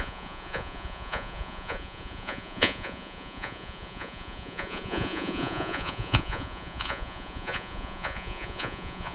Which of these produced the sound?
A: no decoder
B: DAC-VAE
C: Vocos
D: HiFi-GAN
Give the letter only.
C